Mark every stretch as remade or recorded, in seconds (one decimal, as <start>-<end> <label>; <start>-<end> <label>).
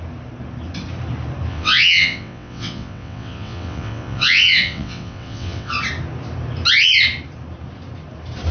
0.0-1.5 recorded; 1.5-5.7 remade; 5.7-8.5 recorded